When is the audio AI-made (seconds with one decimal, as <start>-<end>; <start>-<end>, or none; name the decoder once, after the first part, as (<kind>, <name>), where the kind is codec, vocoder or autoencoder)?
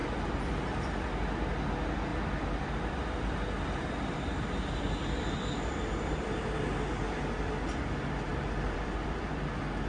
0.0-0.6 (vocoder, BigVGAN v2); 2.1-6.9; 8.3-9.5